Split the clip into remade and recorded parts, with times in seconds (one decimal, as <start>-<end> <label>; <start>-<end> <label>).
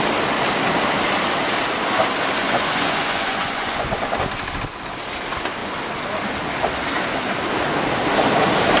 0.0-2.4 recorded; 2.4-3.9 remade; 3.9-8.8 recorded